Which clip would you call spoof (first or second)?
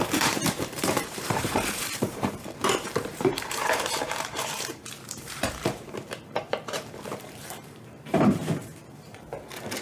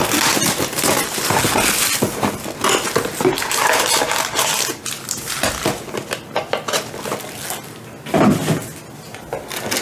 first